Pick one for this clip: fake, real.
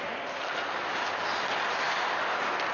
real